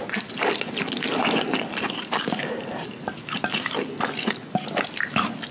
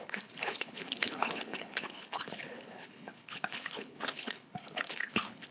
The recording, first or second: first